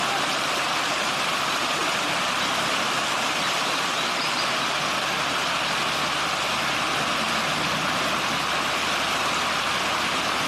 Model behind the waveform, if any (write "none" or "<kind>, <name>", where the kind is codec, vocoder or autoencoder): none